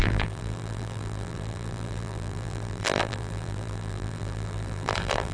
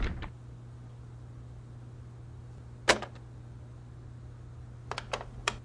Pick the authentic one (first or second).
second